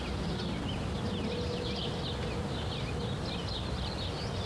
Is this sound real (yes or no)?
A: yes